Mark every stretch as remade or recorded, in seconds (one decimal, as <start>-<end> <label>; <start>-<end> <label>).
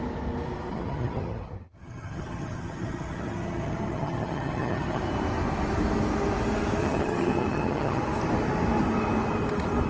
0.0-0.7 recorded; 0.7-5.0 remade; 5.0-6.8 recorded; 6.8-8.0 remade; 8.0-9.9 recorded